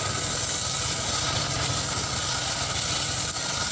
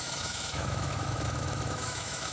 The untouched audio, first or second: first